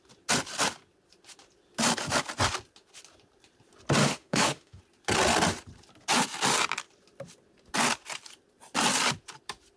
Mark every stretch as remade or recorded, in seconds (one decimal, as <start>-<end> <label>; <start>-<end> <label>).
0.0-4.0 recorded; 4.0-4.8 remade; 4.8-9.8 recorded